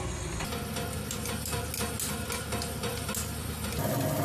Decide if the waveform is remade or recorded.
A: recorded